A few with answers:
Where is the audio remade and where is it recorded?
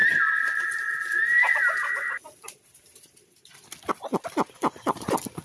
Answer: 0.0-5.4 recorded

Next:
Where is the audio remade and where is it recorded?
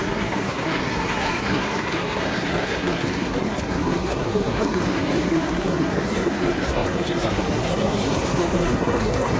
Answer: 0.0-9.4 remade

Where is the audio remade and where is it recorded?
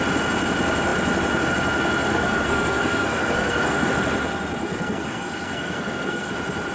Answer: 0.0-2.1 recorded; 2.1-3.9 remade; 3.9-4.6 recorded; 4.6-6.3 remade; 6.3-6.7 recorded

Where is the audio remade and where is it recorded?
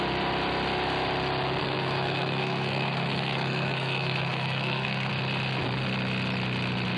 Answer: 0.0-1.6 recorded; 1.6-5.1 remade; 5.1-7.0 recorded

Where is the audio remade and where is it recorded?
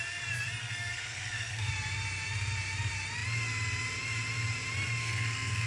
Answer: 0.0-0.6 recorded; 0.6-1.7 remade; 1.7-5.0 recorded; 5.0-5.7 remade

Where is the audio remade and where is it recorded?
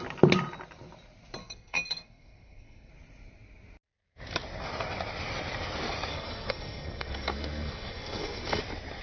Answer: 0.0-1.4 recorded; 1.4-2.9 remade; 2.9-6.1 recorded; 6.1-8.6 remade; 8.6-9.0 recorded